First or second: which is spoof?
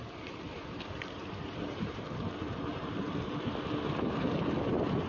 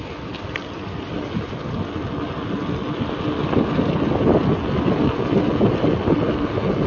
first